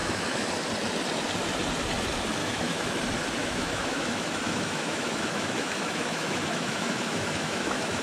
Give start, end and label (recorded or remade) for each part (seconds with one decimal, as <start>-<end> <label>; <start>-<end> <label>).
0.0-0.5 remade; 0.5-2.4 recorded; 2.4-2.9 remade; 2.9-3.4 recorded; 3.4-8.0 remade